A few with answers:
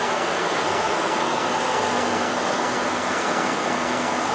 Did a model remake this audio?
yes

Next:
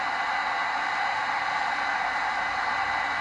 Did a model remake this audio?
no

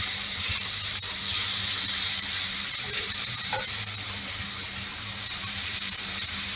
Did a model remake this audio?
yes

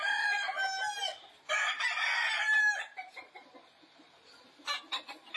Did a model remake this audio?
no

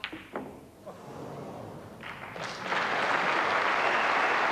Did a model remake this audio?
no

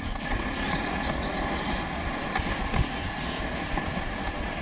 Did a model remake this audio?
no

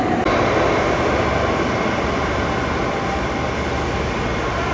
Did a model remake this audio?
no